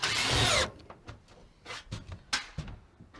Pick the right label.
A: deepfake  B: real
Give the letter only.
B